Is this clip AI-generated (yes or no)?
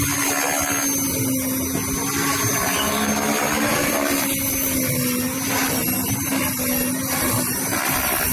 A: no